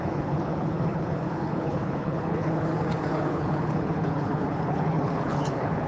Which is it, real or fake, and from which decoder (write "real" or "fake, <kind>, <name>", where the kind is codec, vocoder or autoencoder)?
fake, codec, HILCodec